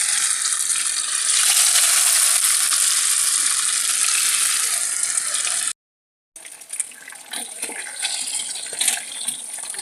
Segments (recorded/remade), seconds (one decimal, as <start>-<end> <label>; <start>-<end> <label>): 0.0-9.8 recorded